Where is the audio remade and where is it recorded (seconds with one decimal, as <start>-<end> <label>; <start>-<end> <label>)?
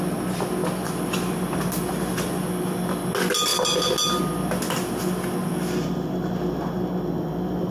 0.0-7.7 recorded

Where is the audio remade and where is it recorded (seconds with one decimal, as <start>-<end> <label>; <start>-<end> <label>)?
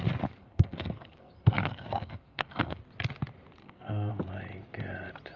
0.0-0.4 recorded; 0.4-2.8 remade; 2.8-3.6 recorded; 3.6-4.1 remade; 4.1-5.4 recorded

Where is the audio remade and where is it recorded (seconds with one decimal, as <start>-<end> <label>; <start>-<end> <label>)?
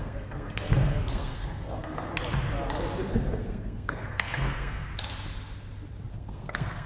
0.0-2.1 remade; 2.1-3.1 recorded; 3.1-4.9 remade; 4.9-6.1 recorded; 6.1-6.9 remade